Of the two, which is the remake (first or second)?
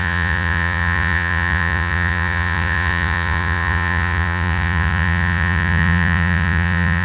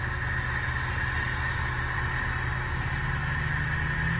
first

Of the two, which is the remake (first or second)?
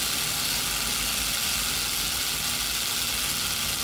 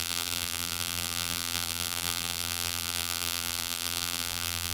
second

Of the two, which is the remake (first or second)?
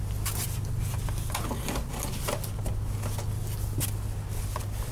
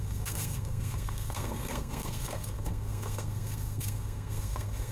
second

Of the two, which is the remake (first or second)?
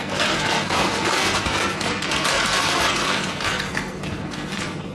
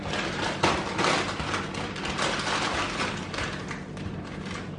first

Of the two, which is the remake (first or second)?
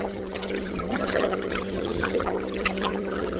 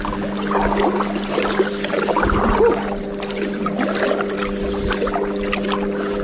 first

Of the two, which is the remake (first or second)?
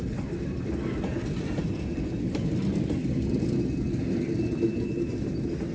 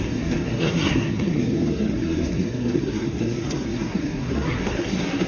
second